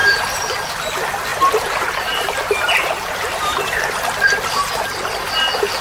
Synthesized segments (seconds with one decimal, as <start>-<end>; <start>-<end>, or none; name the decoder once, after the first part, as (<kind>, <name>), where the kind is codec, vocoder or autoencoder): 0.0-0.7 (vocoder, BigVGAN v2); 1.3-4.0

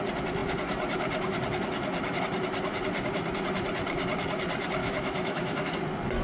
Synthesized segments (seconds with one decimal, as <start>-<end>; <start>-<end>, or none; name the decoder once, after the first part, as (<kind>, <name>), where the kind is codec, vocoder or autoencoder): 4.8-5.7 (autoencoder, DAC-VAE)

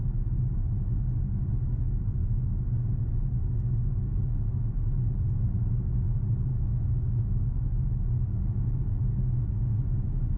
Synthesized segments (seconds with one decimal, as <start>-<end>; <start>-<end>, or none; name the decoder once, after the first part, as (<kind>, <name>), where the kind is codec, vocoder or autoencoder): 6.5-8.1 (autoencoder, DAC-VAE)

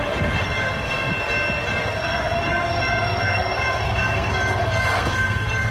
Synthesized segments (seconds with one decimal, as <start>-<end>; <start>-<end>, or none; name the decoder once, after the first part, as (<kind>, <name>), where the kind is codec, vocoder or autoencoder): 0.0-1.1 (codec, SNAC); 1.7-5.7